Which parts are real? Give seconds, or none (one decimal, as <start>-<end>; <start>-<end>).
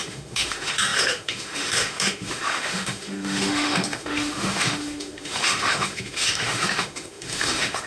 none